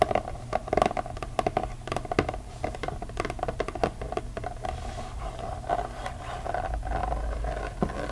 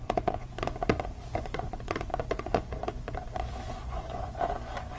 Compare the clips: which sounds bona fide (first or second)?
first